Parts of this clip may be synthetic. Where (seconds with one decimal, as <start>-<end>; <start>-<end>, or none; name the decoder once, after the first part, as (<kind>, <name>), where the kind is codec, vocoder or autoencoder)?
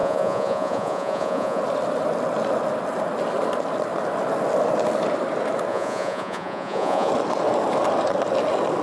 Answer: 0.0-1.6 (vocoder, Vocos); 5.7-7.1